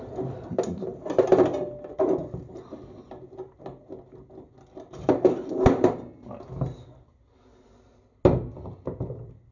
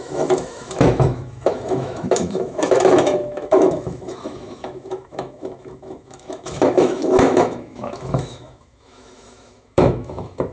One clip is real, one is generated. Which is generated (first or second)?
second